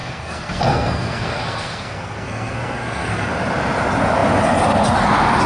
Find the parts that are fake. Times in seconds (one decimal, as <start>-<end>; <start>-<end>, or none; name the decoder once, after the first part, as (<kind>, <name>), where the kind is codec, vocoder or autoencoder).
0.0-3.3 (codec, SNAC)